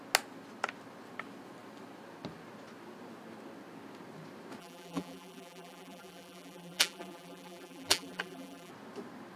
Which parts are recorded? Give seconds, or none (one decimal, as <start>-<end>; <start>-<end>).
0.0-4.6; 8.7-9.4